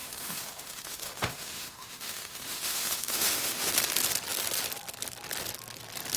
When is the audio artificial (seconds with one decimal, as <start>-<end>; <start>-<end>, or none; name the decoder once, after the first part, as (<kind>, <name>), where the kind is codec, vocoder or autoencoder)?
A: 0.0-3.7 (autoencoder, DAC-VAE)